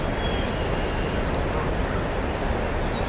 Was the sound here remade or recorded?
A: recorded